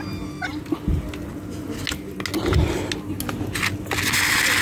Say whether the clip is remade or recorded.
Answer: recorded